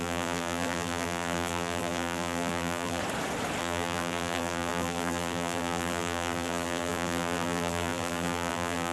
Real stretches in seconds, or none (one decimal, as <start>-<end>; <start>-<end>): 3.0-3.6